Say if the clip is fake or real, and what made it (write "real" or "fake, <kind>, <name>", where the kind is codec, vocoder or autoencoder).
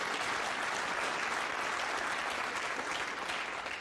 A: real